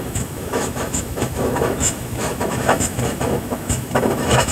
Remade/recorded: remade